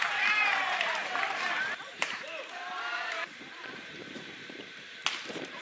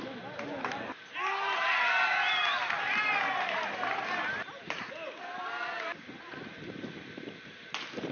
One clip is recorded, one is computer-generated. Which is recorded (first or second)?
second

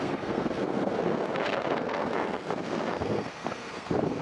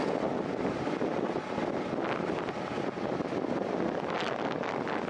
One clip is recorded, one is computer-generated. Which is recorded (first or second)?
second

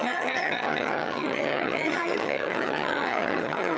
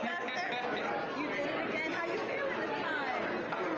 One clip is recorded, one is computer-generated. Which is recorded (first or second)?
second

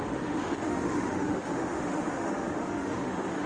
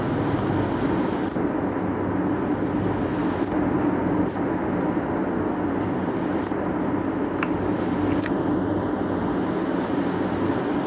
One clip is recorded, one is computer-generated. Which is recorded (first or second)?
second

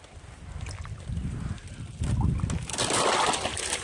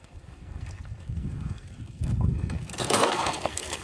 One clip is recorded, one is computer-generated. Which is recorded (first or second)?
first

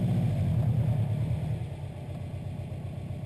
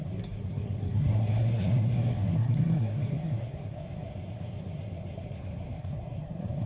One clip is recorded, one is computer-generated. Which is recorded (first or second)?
first